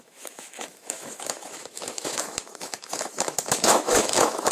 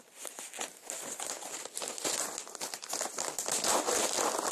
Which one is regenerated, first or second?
first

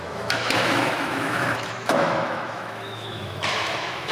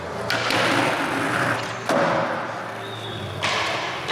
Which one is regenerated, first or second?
first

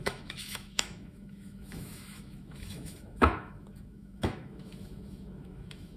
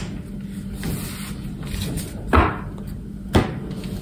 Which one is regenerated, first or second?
first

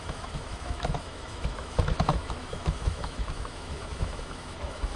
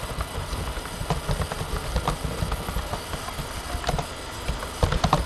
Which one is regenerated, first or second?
first